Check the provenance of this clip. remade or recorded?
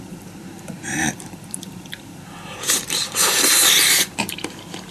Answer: remade